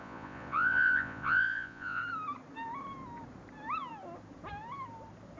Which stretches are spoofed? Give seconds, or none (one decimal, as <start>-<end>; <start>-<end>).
0.0-2.0